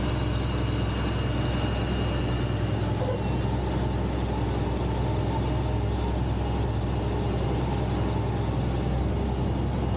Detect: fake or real real